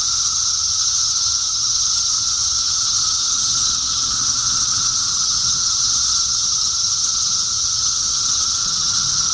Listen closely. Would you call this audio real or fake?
fake